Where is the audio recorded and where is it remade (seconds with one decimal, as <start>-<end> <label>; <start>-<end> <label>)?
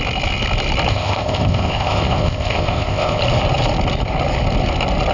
0.0-0.9 recorded; 0.9-3.2 remade; 3.2-5.1 recorded